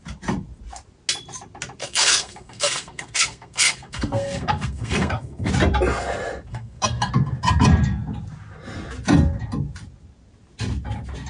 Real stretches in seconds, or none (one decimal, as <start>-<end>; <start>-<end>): 0.0-1.8; 5.5-6.5; 7.1-11.3